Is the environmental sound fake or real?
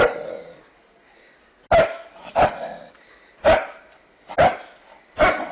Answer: real